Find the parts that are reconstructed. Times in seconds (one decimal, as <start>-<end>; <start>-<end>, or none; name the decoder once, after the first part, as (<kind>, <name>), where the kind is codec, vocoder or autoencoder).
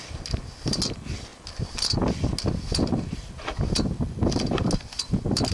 none